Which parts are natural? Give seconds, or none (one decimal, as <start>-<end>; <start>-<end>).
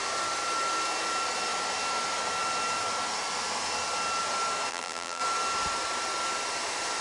0.0-4.7; 5.2-7.0